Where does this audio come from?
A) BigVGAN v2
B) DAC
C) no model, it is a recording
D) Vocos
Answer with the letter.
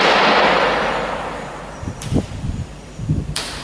A